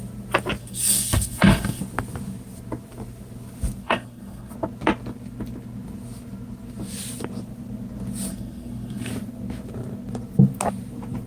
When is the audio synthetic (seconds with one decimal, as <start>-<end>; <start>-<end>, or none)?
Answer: 0.6-1.8; 3.8-4.5; 8.3-9.1

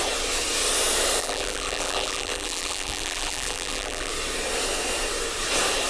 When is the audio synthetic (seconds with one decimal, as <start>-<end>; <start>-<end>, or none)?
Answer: 1.2-4.1

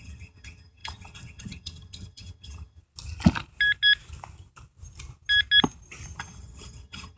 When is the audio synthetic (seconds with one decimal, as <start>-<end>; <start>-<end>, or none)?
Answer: 0.0-2.8; 6.2-7.2